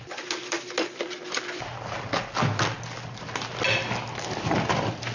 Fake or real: real